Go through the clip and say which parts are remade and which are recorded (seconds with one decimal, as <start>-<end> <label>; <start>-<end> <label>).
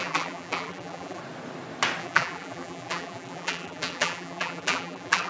0.0-1.2 remade; 1.2-2.0 recorded; 2.0-5.3 remade